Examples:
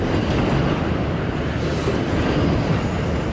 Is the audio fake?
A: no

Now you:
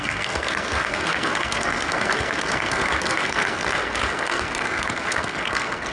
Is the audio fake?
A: yes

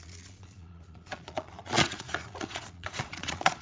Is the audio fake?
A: yes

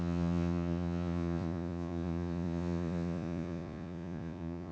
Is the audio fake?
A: yes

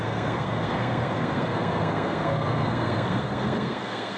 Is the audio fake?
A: yes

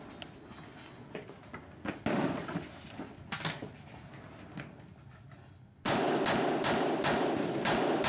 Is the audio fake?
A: no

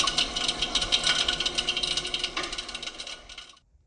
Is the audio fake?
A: no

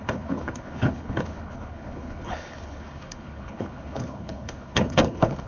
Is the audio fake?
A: yes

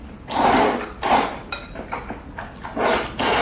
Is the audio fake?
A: no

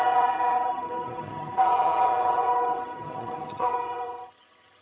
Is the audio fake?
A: yes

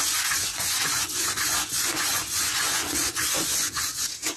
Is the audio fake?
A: yes